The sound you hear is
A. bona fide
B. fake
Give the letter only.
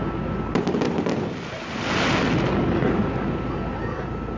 A